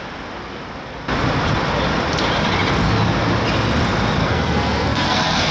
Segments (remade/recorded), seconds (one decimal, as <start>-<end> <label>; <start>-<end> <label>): 0.0-4.2 recorded; 4.2-5.5 remade